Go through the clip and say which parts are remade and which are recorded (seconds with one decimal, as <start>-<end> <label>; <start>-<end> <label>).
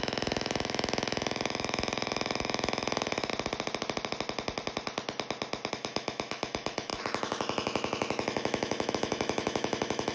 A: 0.0-3.3 remade; 3.3-5.7 recorded; 5.7-10.1 remade